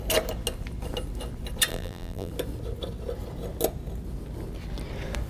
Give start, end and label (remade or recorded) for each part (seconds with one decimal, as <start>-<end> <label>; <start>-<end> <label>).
0.0-1.7 recorded; 1.7-2.3 remade; 2.3-5.3 recorded